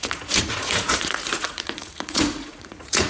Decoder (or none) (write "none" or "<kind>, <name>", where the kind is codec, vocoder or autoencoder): vocoder, Vocos